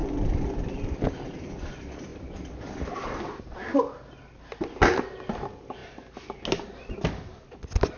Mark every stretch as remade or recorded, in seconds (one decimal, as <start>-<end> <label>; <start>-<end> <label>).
0.0-2.1 recorded; 2.1-2.7 remade; 2.7-8.0 recorded